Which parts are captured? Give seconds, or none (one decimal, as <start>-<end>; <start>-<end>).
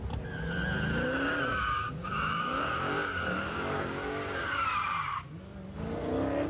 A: 0.0-1.5; 5.4-6.5